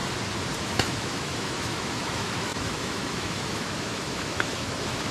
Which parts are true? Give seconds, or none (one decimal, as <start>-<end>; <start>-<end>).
0.0-0.6

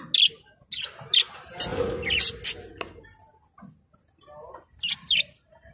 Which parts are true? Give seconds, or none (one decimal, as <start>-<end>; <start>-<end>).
0.0-5.7

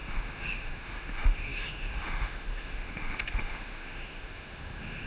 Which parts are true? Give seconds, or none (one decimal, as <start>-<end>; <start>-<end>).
none

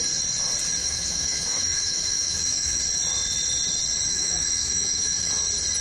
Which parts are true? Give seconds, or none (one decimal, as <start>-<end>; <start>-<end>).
0.0-0.8; 2.8-4.1; 5.3-5.8

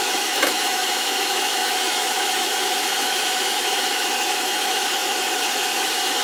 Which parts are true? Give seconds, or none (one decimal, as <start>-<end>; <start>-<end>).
none